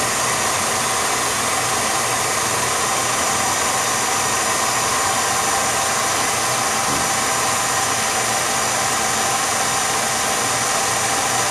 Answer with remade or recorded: recorded